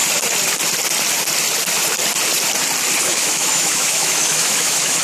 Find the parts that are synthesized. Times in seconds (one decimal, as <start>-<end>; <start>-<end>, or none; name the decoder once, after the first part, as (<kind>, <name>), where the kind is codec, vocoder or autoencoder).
3.0-5.0 (autoencoder, DAC-VAE)